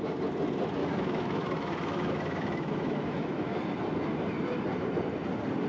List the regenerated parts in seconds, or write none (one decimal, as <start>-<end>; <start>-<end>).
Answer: 0.8-3.6